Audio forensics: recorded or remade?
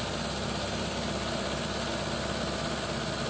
recorded